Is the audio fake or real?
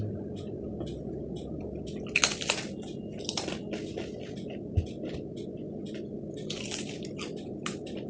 real